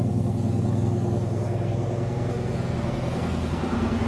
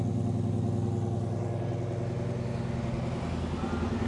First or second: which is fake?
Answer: first